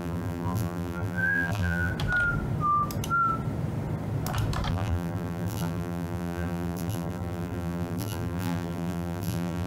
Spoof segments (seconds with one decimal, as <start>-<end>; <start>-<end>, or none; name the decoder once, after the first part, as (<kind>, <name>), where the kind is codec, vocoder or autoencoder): 0.0-1.9 (vocoder, BigVGAN v2); 4.7-9.7